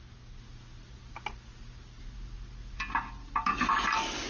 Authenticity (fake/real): real